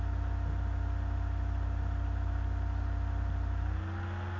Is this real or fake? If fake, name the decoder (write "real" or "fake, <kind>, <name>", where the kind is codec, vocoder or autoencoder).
real